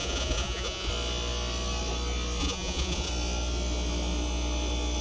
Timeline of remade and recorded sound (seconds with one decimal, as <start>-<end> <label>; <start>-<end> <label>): 0.0-0.9 remade; 0.9-2.4 recorded; 2.4-3.1 remade; 3.1-5.0 recorded